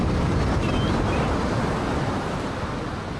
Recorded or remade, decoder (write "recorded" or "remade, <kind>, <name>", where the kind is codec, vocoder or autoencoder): recorded